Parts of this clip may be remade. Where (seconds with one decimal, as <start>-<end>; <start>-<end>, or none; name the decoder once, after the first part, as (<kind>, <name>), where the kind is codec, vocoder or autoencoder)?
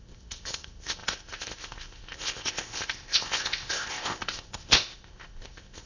0.0-5.9 (codec, ZipCodec)